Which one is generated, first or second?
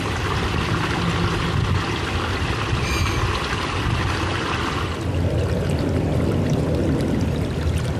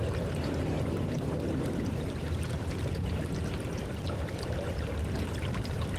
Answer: second